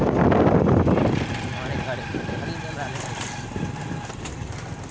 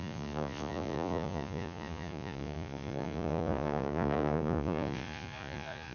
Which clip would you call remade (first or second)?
second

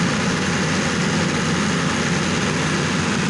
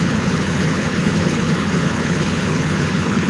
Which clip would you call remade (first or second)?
second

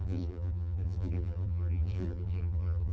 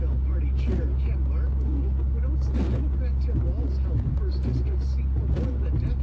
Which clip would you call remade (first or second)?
first